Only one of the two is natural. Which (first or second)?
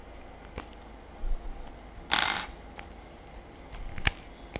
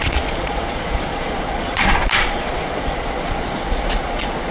first